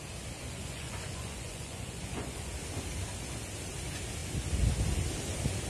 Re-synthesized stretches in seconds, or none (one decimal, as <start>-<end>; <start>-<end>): 0.4-2.5